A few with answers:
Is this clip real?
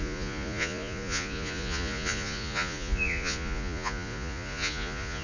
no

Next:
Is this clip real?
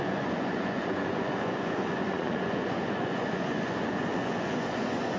no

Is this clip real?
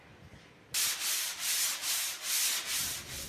yes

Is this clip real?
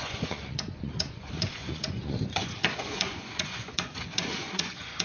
no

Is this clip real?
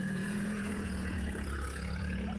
no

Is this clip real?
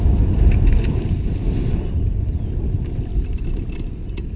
yes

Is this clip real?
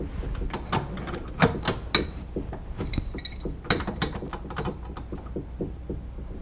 yes